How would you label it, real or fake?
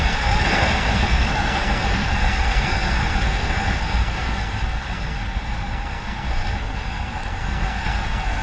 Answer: fake